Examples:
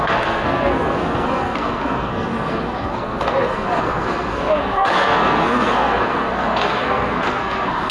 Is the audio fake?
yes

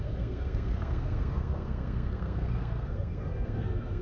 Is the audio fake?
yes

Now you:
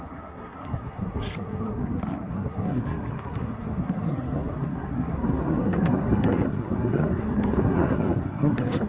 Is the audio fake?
yes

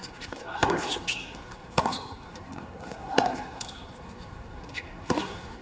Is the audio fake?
yes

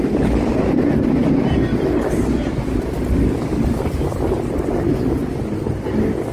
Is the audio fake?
no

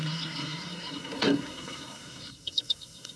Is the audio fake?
yes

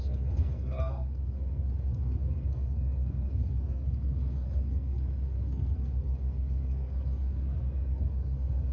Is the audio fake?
yes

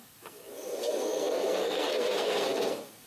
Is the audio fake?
yes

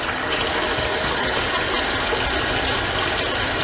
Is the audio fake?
no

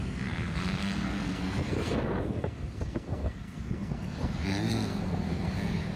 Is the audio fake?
yes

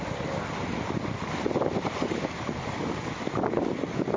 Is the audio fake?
no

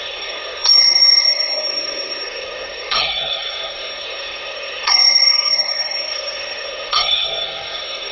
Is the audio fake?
yes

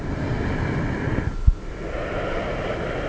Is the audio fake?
no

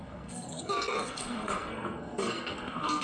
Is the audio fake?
yes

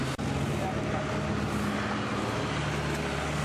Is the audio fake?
no